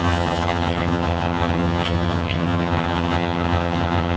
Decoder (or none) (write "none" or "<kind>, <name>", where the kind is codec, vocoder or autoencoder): vocoder, HiFi-GAN